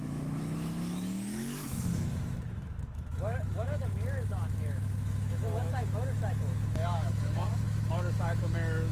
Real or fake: fake